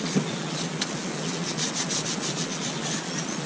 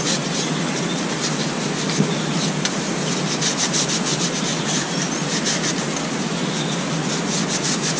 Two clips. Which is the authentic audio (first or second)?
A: second